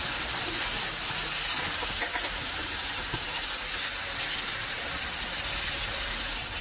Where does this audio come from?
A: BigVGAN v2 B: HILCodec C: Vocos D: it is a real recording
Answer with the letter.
D